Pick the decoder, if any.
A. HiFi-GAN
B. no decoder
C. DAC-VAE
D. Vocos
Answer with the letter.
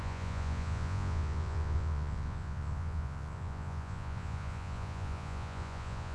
D